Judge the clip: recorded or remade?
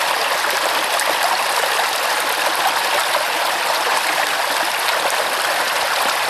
recorded